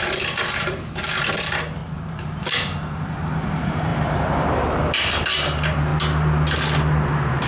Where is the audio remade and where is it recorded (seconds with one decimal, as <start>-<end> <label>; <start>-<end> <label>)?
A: 0.0-5.9 remade; 5.9-7.1 recorded; 7.1-7.5 remade